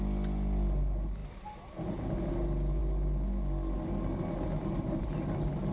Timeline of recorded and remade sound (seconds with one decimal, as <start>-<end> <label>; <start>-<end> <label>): 0.0-5.7 recorded